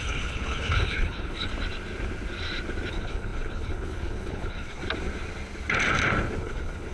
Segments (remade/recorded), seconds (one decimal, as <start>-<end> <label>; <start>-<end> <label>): 0.0-1.5 remade; 1.5-2.9 recorded; 2.9-4.8 remade; 4.8-6.4 recorded; 6.4-6.9 remade